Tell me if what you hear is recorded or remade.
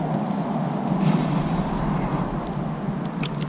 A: recorded